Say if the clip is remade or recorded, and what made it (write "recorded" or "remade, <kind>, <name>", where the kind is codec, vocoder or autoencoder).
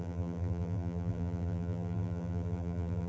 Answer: remade, vocoder, BigVGAN v2